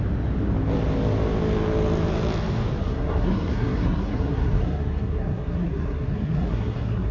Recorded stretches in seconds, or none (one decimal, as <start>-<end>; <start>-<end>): 0.0-2.8